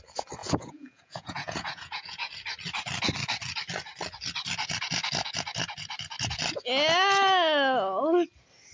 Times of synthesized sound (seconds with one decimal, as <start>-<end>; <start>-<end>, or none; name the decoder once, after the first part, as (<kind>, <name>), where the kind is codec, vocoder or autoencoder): 0.4-2.3 (vocoder, Vocos)